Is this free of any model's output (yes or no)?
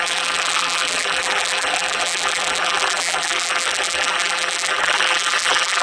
no